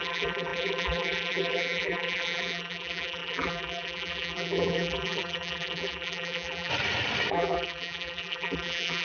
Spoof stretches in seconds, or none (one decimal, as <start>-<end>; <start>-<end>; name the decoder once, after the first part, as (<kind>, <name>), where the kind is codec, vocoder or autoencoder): 0.0-6.7 (vocoder, BigVGAN v2); 7.3-9.0